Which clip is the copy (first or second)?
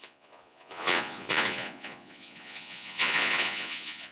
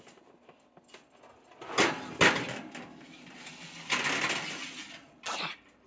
first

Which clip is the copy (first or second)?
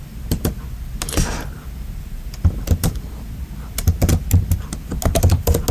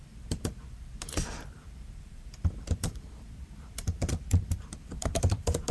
second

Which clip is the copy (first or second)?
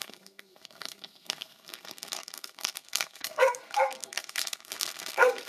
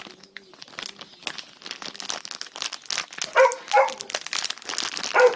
first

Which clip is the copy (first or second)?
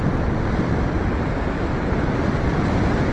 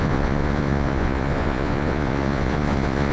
second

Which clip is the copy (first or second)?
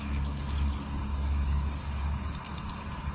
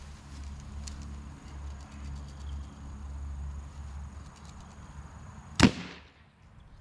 first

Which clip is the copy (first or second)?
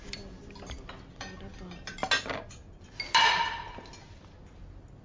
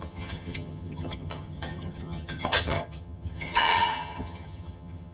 second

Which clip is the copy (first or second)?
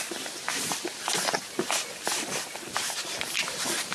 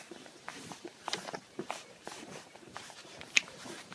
second